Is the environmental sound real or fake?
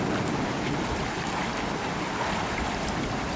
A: real